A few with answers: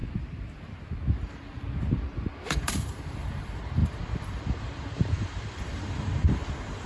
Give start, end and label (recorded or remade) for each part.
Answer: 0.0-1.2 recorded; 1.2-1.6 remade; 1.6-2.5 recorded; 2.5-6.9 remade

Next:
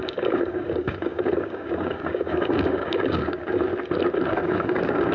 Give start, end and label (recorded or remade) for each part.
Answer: 0.0-3.7 remade; 3.7-4.3 recorded; 4.3-5.1 remade

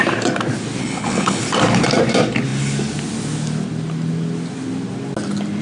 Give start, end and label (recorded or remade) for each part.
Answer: 0.0-0.8 recorded; 0.8-1.4 remade; 1.4-5.6 recorded